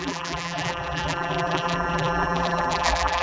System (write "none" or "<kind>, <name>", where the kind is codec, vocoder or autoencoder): vocoder, BigVGAN v2